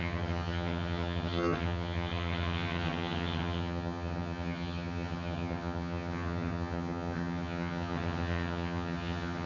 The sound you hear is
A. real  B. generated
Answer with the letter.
B